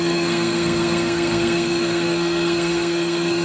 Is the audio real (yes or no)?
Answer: no